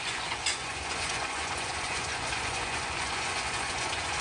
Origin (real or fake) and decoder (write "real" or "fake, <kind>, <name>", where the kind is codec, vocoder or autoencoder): fake, vocoder, Vocos